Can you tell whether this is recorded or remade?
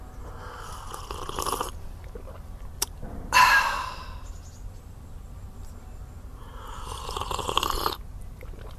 recorded